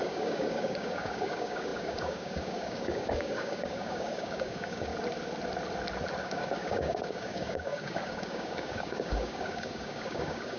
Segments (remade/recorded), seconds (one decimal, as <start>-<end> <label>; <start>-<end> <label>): 0.0-4.9 remade; 4.9-6.2 recorded; 6.2-10.6 remade